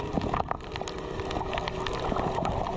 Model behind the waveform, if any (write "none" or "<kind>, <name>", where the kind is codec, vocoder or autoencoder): none